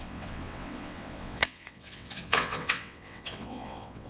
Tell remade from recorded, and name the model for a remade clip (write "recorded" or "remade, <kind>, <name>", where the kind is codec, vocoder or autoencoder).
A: remade, vocoder, WaveNeXt